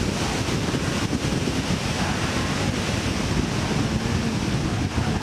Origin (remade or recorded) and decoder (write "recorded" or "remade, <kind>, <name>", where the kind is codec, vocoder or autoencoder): recorded